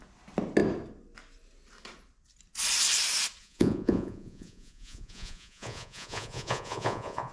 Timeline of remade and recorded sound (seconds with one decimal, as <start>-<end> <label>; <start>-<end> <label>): 0.0-3.4 recorded; 3.4-7.3 remade